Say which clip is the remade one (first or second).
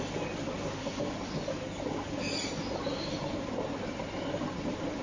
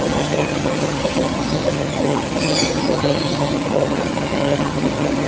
second